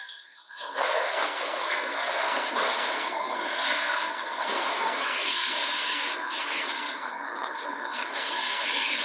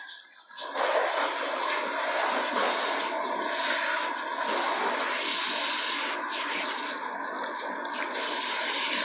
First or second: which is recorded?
second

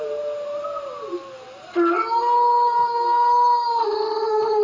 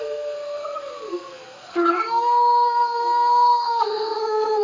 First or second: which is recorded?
first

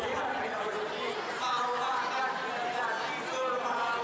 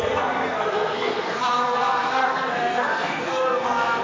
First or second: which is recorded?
first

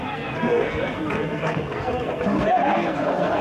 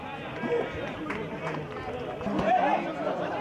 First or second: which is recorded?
second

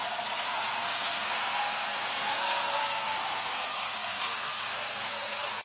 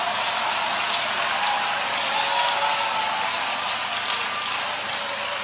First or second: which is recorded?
second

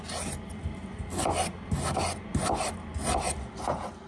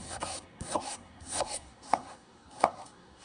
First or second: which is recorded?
first